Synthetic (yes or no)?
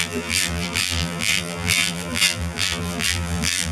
yes